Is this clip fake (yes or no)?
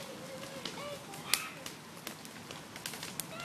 no